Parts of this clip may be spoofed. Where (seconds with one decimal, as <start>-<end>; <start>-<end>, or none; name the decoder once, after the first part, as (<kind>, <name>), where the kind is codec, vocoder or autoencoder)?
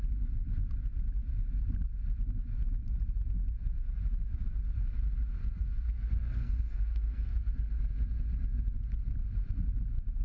5.4-7.8 (codec, SNAC)